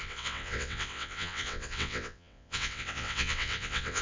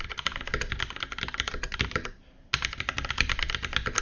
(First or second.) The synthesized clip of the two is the first